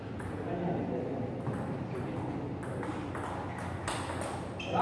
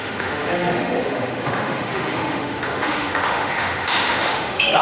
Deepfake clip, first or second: second